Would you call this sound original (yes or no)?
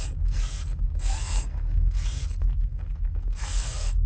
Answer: no